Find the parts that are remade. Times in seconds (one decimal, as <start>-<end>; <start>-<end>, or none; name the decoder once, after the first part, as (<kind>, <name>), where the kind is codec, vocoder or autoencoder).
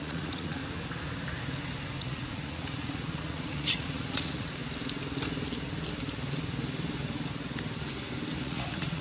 0.0-0.6 (vocoder, Vocos); 2.0-4.6; 8.4-9.0